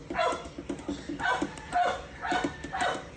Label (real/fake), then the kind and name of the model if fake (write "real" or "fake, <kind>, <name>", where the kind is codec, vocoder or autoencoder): real